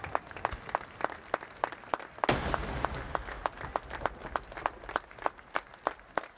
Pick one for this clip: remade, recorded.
recorded